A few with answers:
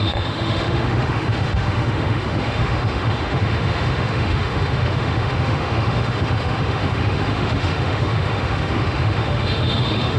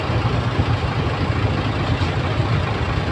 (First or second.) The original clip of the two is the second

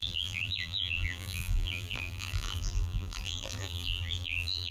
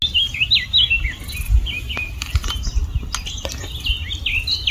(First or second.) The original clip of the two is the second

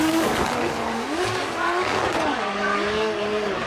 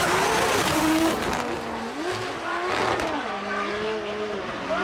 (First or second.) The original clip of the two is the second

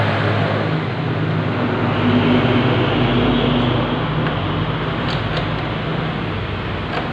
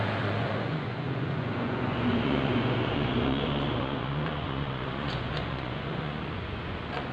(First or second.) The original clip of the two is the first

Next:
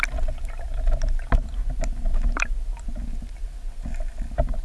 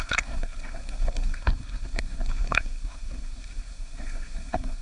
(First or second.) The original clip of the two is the first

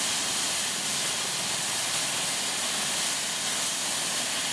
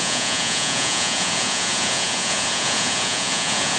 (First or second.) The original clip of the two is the first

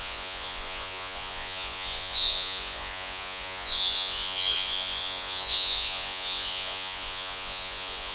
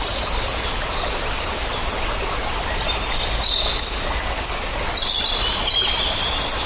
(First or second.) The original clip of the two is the second